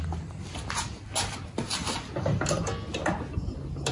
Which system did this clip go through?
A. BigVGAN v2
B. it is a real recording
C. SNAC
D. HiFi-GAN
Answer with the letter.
B